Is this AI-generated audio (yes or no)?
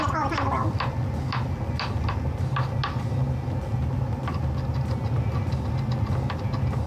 no